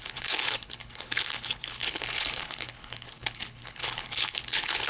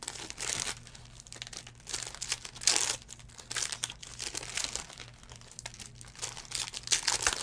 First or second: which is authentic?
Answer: second